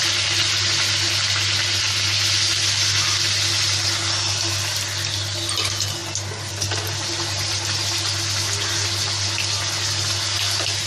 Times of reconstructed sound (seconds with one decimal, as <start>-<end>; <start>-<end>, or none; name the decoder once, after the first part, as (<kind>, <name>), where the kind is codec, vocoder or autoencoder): none